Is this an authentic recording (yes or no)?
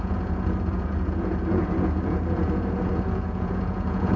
no